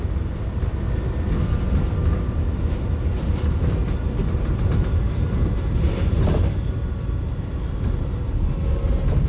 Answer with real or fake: real